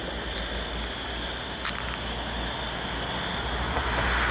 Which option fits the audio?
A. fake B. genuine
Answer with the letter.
B